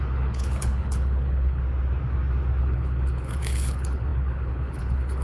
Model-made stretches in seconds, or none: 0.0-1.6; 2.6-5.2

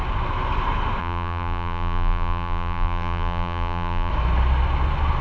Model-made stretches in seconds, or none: 1.0-4.1

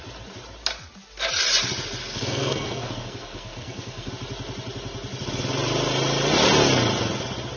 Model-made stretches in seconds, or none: 2.0-4.1

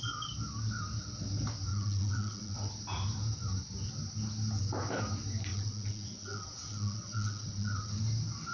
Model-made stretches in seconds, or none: 1.7-2.7; 5.5-7.9

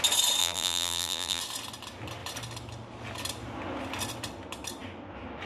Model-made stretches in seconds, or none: 0.4-1.4

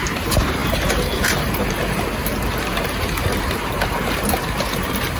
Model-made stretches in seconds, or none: 0.0-5.2

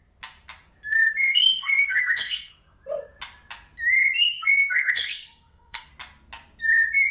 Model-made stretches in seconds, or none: 0.9-2.5; 4.2-5.9